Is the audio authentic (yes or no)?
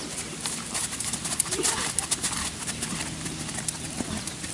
yes